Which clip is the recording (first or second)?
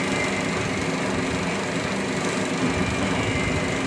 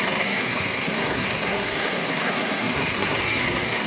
first